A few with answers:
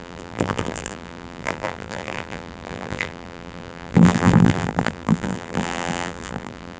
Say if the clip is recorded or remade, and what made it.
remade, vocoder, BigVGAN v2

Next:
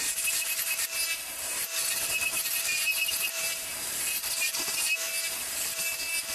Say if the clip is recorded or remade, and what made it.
remade, vocoder, BigVGAN v2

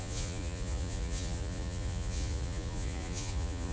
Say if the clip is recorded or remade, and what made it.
remade, vocoder, Vocos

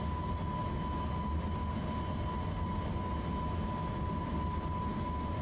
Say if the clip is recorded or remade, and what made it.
recorded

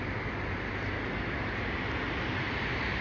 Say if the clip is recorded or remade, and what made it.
recorded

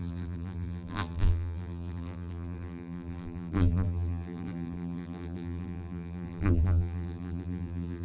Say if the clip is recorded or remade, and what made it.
remade, vocoder, BigVGAN v2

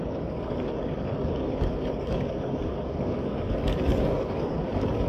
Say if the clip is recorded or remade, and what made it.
remade, codec, DAC